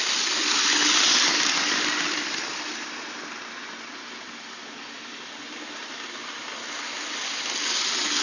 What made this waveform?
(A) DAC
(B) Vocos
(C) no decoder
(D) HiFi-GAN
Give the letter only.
C